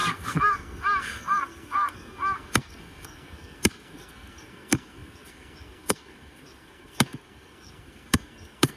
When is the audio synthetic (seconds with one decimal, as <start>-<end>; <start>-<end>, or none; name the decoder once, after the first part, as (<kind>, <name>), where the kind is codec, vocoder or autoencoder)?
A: 0.0-8.8 (codec, SNAC)